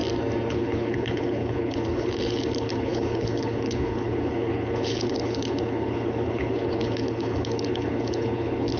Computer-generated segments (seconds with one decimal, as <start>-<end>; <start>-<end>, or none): 0.5-8.8